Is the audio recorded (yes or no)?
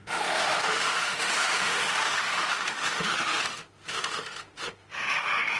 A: no